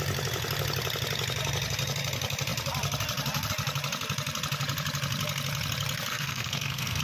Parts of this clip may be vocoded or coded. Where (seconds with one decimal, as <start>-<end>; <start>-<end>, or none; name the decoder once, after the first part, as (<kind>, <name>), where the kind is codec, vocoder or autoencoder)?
6.1-7.0 (codec, SNAC)